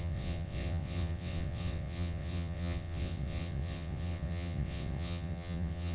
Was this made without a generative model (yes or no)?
no